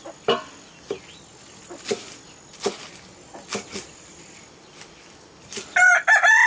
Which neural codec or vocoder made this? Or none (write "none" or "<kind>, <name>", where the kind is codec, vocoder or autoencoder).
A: none